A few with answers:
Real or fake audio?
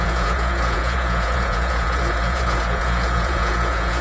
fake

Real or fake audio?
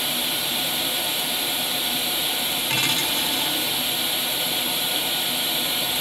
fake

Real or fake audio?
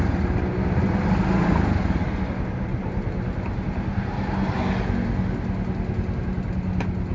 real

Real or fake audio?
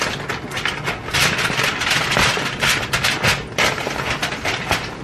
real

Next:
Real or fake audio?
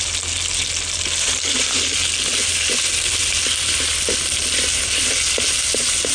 real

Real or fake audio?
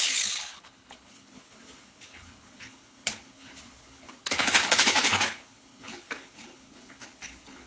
fake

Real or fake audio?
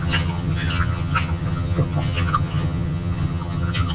fake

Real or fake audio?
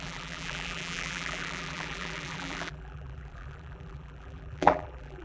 fake